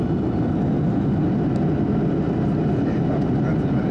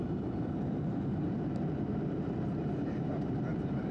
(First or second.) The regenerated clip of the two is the second